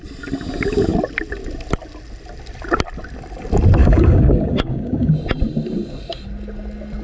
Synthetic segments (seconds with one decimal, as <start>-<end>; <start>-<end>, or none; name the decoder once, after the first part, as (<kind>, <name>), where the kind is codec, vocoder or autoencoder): 3.8-5.1 (codec, DAC)